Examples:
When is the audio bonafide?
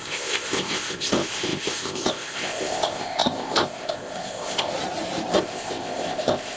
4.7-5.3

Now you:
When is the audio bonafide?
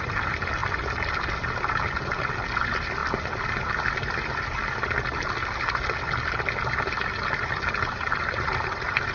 0.0-9.1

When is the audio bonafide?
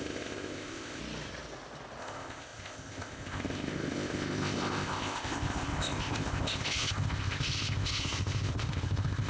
1.0-2.0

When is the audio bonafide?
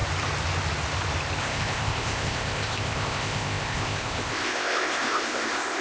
0.0-1.4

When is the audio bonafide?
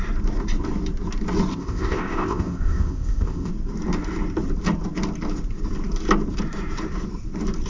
0.0-1.5; 3.5-7.7